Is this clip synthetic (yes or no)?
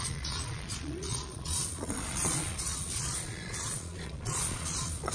yes